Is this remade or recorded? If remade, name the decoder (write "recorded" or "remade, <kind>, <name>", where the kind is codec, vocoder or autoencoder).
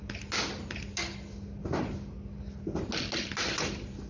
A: recorded